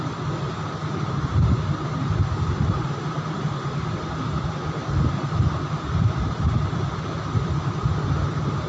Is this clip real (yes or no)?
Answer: no